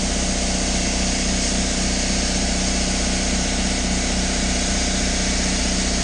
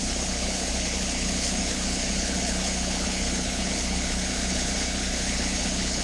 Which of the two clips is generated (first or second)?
second